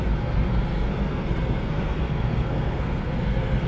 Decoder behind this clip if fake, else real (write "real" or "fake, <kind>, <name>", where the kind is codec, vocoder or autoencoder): fake, codec, SNAC